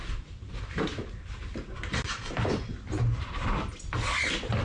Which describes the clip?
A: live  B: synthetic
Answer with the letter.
A